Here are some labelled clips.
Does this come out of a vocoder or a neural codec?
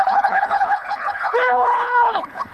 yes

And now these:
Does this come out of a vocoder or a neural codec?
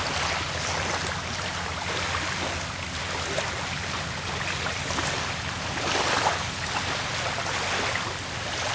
no